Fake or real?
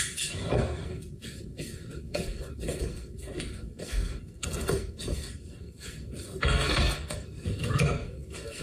fake